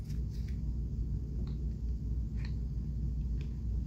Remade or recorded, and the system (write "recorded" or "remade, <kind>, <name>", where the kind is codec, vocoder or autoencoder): recorded